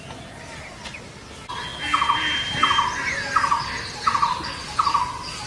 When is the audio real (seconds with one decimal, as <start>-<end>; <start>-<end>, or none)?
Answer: 0.0-5.5